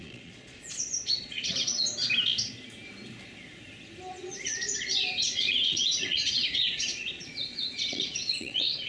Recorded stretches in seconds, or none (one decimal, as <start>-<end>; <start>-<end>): 1.9-4.1